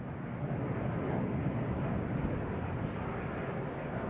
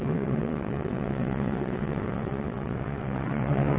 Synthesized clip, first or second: second